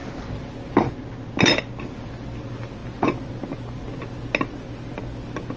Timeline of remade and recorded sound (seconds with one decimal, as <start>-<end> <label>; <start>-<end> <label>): 0.0-5.6 recorded